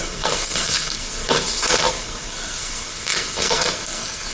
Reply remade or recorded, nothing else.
remade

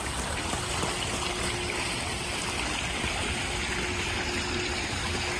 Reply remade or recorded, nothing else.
recorded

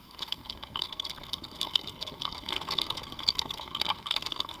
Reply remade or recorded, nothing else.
remade